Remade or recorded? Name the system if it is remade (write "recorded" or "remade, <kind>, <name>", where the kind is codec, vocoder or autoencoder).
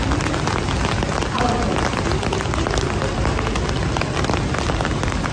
recorded